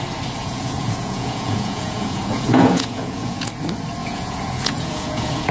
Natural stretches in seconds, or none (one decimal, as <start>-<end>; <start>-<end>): 0.0-0.4; 3.5-4.0